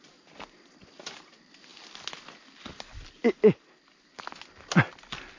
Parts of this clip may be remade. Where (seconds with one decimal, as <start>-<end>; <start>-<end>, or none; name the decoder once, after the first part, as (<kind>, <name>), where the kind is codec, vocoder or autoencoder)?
none